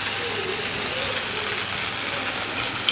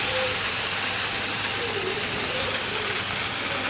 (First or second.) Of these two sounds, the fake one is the second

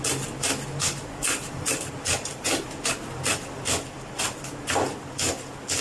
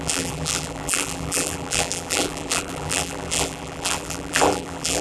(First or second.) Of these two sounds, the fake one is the second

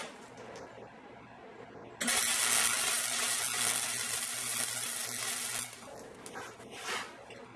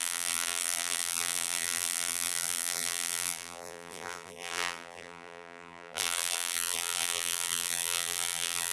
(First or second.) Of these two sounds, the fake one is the second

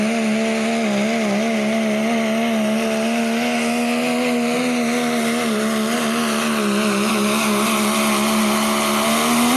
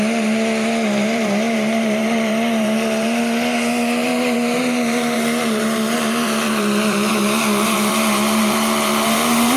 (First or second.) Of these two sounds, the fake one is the second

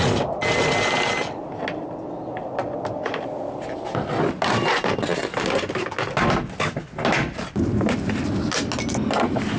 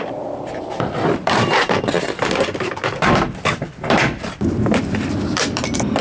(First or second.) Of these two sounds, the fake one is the second